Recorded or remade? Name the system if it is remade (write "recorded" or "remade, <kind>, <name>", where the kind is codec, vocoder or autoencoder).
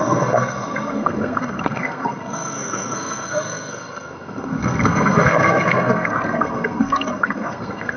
remade, codec, SNAC